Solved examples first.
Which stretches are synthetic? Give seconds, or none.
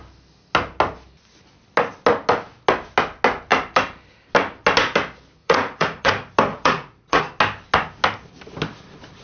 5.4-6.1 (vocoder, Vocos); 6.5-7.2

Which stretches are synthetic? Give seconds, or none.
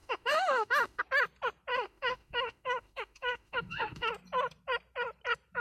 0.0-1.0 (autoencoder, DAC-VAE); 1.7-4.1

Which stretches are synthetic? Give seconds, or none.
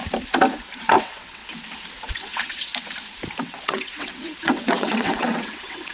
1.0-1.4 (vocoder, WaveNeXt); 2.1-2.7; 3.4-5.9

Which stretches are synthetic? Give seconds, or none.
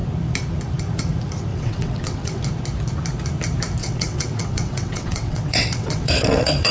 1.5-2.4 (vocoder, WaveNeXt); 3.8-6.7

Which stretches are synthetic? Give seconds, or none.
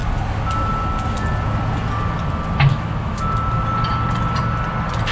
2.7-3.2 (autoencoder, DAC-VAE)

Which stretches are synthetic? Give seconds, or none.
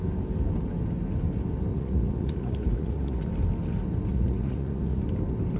1.7-3.3 (vocoder, Vocos); 4.1-5.0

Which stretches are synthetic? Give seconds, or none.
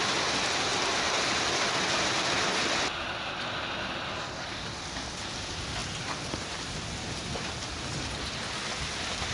0.7-1.5 (vocoder, BigVGAN v2); 5.8-6.9